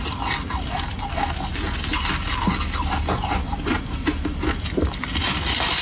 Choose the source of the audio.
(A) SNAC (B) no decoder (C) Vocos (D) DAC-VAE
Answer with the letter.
B